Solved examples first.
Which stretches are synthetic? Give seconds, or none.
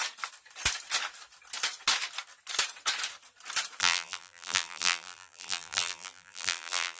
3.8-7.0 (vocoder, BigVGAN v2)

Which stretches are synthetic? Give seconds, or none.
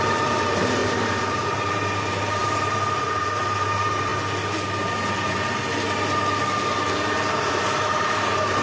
0.0-4.1 (vocoder, BigVGAN v2); 7.3-8.6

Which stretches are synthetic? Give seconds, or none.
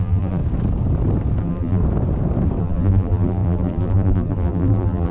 0.0-0.4 (vocoder, BigVGAN v2); 1.4-1.8; 2.6-5.1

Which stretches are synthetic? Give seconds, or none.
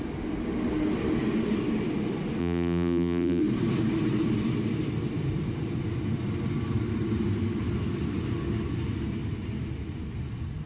2.4-3.4 (vocoder, BigVGAN v2)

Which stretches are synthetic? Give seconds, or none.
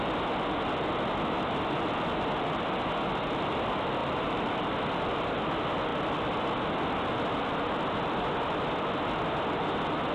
4.0-4.5 (vocoder, BigVGAN v2)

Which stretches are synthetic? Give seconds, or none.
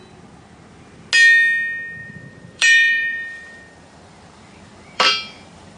2.0-5.8 (vocoder, BigVGAN v2)